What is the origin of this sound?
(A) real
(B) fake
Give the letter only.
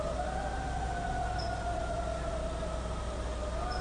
A